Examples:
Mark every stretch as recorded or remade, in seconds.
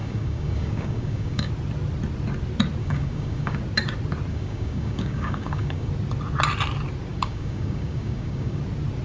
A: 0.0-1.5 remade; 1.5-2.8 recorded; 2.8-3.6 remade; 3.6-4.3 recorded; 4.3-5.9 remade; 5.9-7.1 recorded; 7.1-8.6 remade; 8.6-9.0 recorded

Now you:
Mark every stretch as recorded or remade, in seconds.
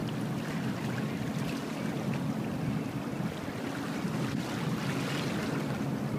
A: 0.0-6.2 recorded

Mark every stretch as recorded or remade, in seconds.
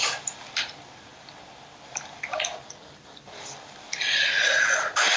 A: 0.0-5.2 recorded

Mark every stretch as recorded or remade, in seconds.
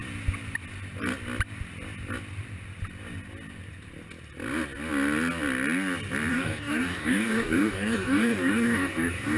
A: 0.0-6.3 recorded; 6.3-9.4 remade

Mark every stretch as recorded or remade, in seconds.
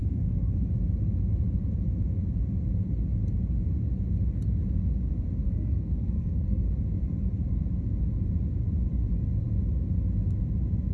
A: 0.0-0.7 remade; 0.7-5.4 recorded; 5.4-6.7 remade; 6.7-10.9 recorded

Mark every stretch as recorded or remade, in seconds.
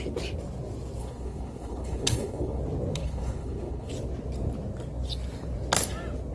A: 0.0-1.0 recorded; 1.0-2.6 remade; 2.6-3.0 recorded; 3.0-3.9 remade; 3.9-6.3 recorded